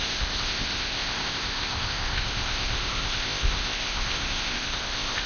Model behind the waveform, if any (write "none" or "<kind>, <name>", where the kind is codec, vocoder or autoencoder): codec, ZipCodec